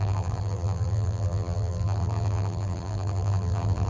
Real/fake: fake